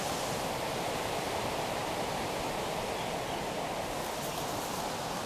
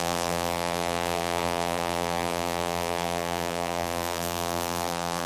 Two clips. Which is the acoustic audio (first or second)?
first